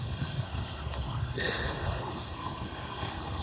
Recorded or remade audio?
remade